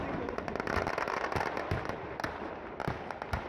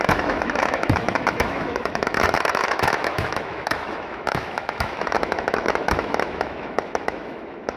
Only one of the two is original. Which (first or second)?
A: first